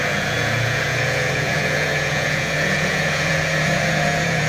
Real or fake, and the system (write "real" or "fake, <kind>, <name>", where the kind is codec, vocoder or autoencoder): fake, vocoder, Vocos